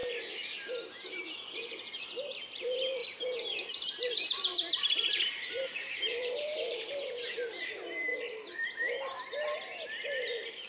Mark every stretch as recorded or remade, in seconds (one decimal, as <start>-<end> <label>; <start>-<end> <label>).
0.0-1.2 remade; 1.2-3.0 recorded; 3.0-6.9 remade; 6.9-10.7 recorded